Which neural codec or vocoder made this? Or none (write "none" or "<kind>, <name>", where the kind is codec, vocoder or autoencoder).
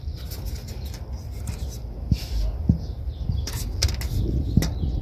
none